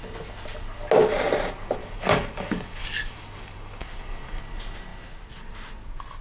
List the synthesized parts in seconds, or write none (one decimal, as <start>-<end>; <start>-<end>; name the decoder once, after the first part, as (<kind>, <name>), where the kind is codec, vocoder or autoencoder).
1.8-4.4 (codec, DAC)

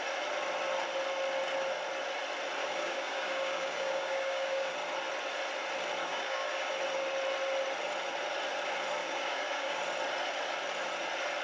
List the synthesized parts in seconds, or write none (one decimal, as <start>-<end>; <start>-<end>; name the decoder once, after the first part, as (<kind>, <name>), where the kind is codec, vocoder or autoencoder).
2.6-4.7 (codec, DAC); 6.0-6.7; 9.0-9.8

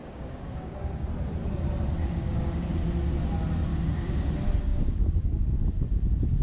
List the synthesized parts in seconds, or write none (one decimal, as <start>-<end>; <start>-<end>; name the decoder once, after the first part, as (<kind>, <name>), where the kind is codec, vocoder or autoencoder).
0.0-1.1 (codec, DAC); 2.0-2.7; 3.7-4.3; 4.7-5.6